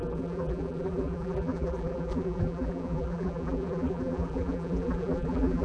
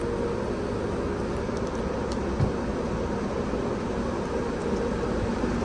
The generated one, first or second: first